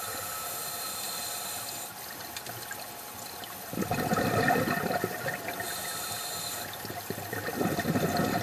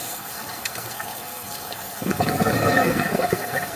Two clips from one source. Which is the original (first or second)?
first